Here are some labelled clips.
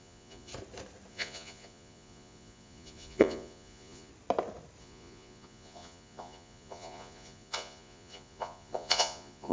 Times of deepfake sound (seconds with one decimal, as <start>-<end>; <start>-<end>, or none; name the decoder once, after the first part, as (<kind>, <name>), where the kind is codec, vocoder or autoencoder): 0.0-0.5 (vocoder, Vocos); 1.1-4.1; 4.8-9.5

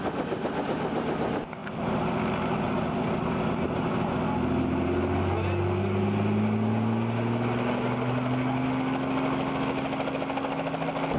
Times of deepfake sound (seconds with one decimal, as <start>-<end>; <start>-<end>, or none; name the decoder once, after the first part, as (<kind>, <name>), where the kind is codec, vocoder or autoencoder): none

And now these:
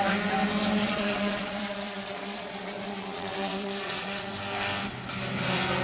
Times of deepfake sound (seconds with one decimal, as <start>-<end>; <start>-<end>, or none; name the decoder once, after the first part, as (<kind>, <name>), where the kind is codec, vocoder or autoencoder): 0.8-4.3 (vocoder, Vocos)

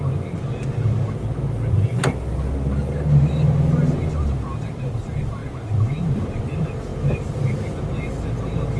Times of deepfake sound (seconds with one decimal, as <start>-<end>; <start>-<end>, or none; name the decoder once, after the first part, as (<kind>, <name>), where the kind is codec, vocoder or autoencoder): none

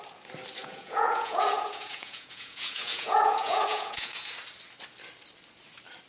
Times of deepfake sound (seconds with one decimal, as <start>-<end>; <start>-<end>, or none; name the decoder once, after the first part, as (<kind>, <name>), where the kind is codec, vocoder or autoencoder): 0.6-4.3 (vocoder, Vocos)